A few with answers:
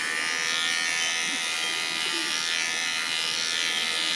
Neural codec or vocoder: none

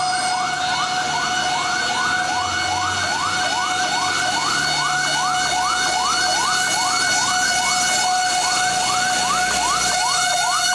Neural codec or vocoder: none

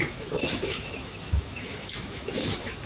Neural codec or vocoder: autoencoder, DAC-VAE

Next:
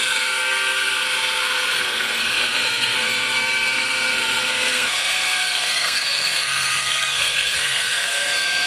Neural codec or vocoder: codec, SNAC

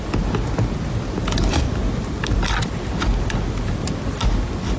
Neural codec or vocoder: none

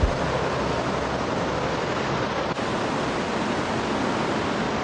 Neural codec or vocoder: none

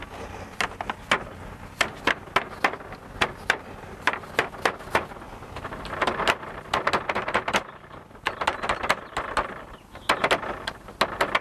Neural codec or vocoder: none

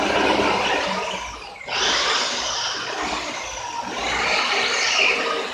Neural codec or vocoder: none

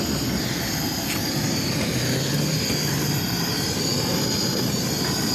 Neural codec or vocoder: none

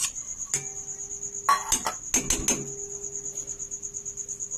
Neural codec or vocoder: none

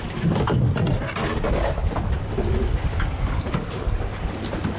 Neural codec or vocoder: none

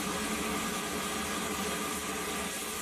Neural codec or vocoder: none